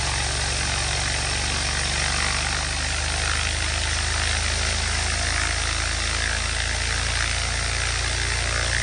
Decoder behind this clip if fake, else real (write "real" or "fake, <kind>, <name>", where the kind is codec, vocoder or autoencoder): real